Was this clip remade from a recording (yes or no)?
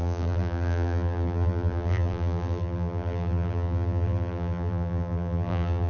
yes